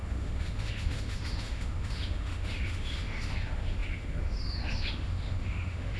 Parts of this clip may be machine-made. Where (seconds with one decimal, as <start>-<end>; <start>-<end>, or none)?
0.0-6.0

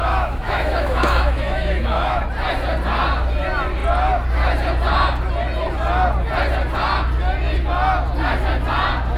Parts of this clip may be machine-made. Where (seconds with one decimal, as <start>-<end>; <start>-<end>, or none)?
0.0-2.2

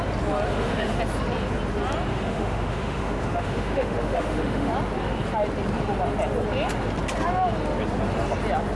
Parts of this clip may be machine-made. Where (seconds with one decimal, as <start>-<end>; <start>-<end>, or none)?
0.5-1.0; 2.1-4.7

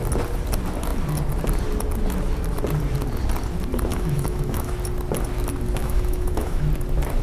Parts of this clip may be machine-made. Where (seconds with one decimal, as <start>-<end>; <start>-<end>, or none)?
3.9-4.7; 5.8-6.6

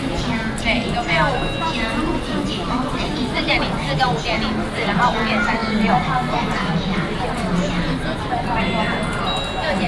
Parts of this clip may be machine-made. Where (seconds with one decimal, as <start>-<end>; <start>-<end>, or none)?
none

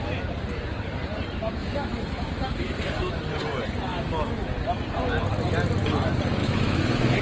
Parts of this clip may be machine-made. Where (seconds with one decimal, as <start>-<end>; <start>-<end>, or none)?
1.6-3.1; 3.9-4.5; 6.4-7.2